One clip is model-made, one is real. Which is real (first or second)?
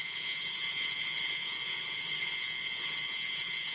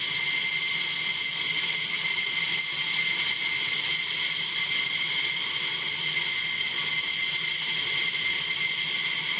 second